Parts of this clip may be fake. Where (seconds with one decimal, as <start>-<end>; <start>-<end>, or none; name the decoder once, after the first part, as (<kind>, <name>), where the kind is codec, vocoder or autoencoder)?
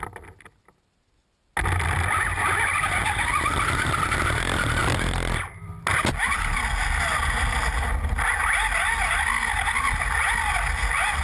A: none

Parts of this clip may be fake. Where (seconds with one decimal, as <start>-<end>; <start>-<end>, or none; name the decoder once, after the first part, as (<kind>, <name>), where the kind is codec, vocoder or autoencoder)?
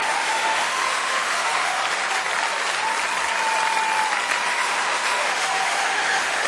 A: 0.0-1.8 (autoencoder, DAC-VAE); 4.5-6.5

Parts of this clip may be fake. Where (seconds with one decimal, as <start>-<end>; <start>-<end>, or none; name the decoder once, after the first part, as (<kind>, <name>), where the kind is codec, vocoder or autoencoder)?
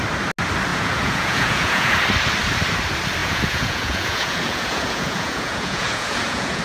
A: 0.7-1.9 (vocoder, Vocos); 3.2-6.6